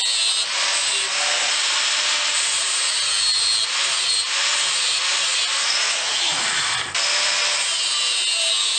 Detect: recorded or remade recorded